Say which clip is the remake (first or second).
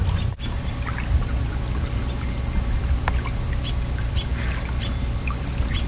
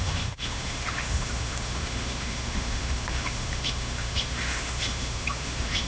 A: second